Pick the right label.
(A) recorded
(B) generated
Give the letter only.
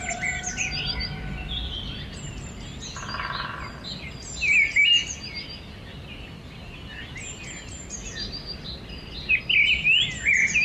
A